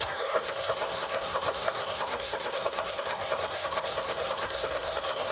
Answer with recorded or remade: remade